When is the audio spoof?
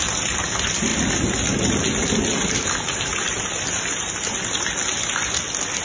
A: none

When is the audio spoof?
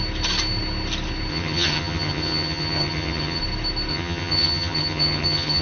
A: 1.3-3.4 (vocoder, HiFi-GAN); 3.9-5.6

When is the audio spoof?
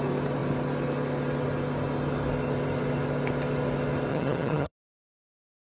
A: 4.1-4.7 (vocoder, HiFi-GAN)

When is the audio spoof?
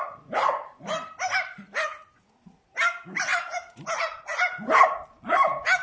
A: none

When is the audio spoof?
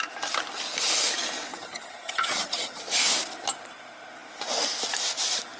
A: 1.5-2.8 (vocoder, HiFi-GAN)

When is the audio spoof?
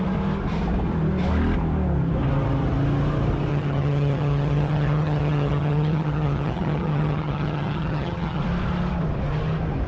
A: 3.5-8.4 (vocoder, HiFi-GAN)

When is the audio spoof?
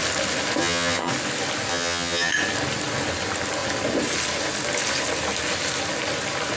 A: 0.6-1.1 (vocoder, HiFi-GAN); 1.7-2.3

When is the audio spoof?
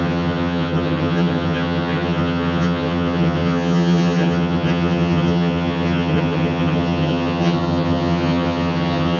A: 0.0-9.2 (vocoder, HiFi-GAN)